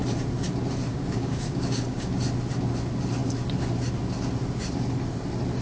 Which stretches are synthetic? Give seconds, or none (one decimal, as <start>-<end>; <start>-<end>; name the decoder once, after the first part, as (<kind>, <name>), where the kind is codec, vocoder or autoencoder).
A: 0.9-2.2 (codec, DAC)

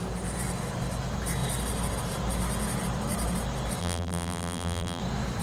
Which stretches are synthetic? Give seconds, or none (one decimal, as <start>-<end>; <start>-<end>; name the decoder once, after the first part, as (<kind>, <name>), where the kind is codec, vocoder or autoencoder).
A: 3.8-5.0 (vocoder, BigVGAN v2)

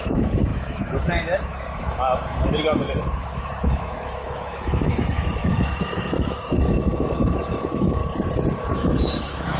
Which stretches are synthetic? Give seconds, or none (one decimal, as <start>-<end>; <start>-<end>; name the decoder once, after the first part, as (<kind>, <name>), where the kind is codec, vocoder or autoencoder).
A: 0.0-8.0 (autoencoder, DAC-VAE); 8.6-9.6

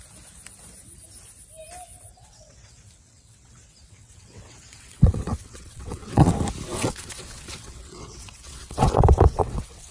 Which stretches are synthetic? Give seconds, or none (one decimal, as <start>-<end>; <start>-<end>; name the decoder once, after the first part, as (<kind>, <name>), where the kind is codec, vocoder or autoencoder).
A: 2.1-6.3 (vocoder, WaveNeXt); 6.7-9.9